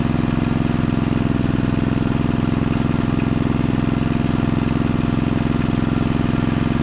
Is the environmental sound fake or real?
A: real